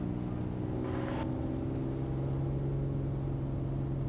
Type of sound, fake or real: real